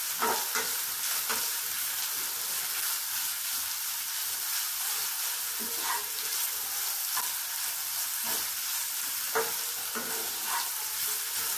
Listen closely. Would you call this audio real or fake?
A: real